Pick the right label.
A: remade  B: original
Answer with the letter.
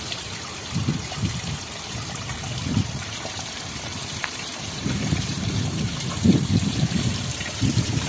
A